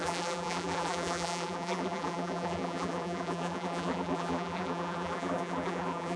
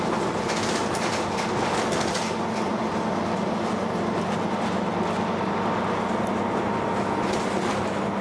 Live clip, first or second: second